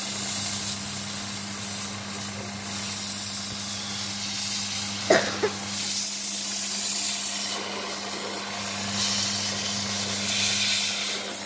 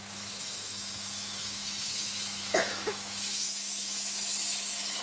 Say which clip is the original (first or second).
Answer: first